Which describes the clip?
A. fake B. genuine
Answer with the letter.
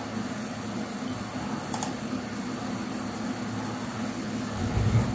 B